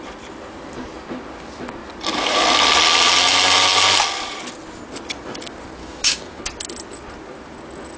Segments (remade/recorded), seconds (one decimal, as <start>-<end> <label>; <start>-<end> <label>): 0.0-5.8 recorded; 5.8-6.4 remade; 6.4-8.0 recorded